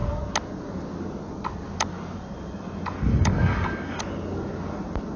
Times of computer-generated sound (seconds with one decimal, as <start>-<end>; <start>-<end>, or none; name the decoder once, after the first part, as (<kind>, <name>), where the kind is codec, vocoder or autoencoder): 3.1-4.0 (codec, DAC)